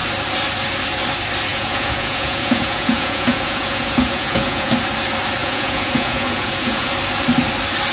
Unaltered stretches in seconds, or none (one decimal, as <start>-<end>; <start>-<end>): 0.0-1.5; 4.7-5.4; 6.9-7.9